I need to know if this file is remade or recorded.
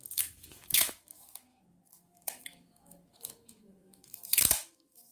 remade